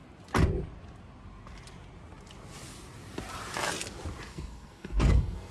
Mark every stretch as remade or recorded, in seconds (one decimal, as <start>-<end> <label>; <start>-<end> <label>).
0.0-4.3 recorded; 4.3-5.5 remade